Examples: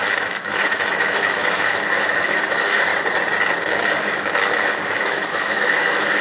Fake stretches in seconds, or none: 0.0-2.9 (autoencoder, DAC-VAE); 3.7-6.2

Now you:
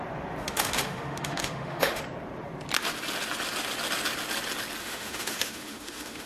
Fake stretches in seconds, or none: 0.4-2.0 (autoencoder, DAC-VAE); 4.8-6.3